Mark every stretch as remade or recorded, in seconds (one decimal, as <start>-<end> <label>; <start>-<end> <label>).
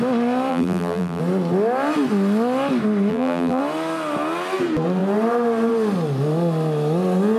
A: 0.0-0.5 recorded; 0.5-1.2 remade; 1.2-3.1 recorded; 3.1-3.6 remade; 3.6-7.4 recorded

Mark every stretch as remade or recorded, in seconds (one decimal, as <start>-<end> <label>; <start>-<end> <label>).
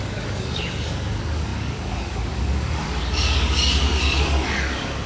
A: 0.0-5.1 remade